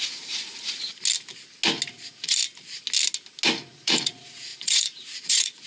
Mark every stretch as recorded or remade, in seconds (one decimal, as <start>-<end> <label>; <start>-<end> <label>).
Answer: 0.0-0.5 remade; 0.5-1.9 recorded; 1.9-2.4 remade; 2.4-3.7 recorded; 3.7-5.7 remade